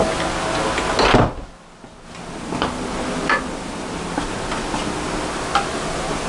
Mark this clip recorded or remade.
recorded